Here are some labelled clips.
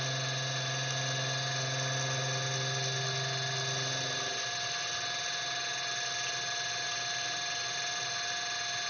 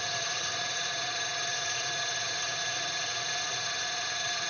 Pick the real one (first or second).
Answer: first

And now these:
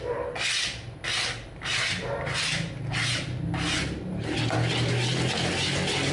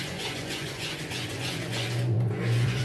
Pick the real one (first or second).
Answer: first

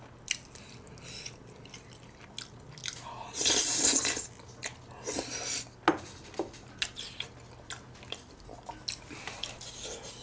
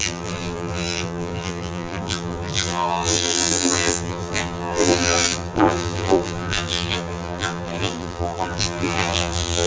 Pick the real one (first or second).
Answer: first